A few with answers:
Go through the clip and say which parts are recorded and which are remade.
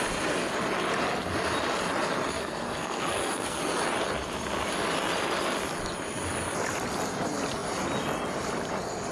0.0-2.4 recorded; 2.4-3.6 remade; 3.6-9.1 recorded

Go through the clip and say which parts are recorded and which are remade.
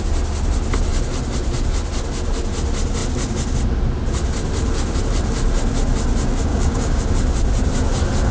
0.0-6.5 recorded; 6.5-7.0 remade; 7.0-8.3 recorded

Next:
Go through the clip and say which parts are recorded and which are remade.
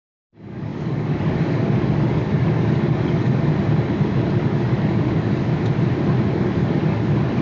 0.0-3.5 remade; 3.5-4.0 recorded; 4.0-5.5 remade; 5.5-6.3 recorded; 6.3-7.4 remade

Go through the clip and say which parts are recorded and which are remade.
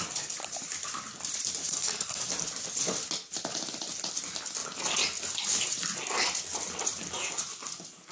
0.0-1.6 recorded; 1.6-2.2 remade; 2.2-8.1 recorded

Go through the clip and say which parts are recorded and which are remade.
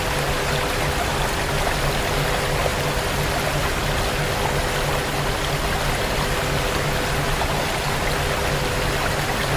0.0-9.6 recorded